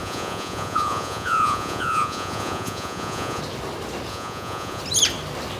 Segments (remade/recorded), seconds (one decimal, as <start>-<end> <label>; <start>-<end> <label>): 0.0-3.4 remade; 3.4-4.1 recorded; 4.1-4.8 remade; 4.8-5.6 recorded